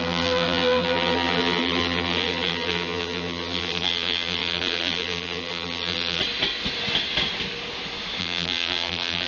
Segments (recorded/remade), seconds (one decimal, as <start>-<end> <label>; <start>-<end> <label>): 0.0-6.2 remade; 6.2-8.2 recorded; 8.2-9.3 remade

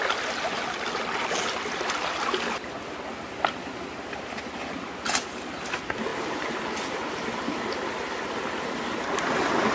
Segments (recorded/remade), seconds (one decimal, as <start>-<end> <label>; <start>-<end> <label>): 0.0-9.7 recorded